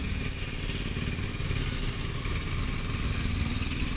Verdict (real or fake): real